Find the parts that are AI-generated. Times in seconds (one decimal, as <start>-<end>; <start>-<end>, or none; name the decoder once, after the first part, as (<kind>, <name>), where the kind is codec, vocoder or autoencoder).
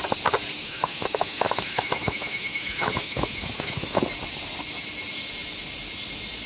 0.6-4.0 (autoencoder, DAC-VAE)